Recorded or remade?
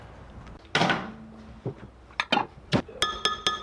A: recorded